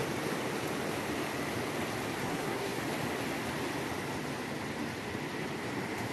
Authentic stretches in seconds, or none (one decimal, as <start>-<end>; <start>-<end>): 0.0-2.2; 2.8-6.1